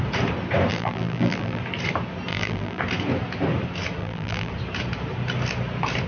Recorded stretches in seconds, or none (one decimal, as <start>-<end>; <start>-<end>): 0.0-0.7; 1.6-2.3; 2.8-4.0; 4.5-6.1